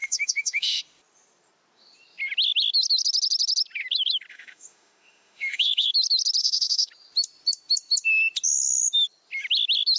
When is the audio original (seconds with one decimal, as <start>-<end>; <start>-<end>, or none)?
0.8-4.3; 5.9-6.4; 6.9-10.0